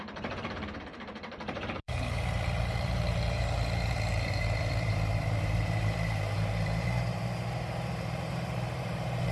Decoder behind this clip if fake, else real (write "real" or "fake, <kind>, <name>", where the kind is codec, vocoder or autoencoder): fake, vocoder, BigVGAN v2